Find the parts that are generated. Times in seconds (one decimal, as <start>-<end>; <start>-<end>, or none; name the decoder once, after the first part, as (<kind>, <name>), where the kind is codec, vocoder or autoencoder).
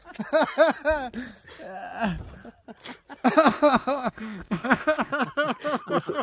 3.5-5.1 (codec, ZipCodec)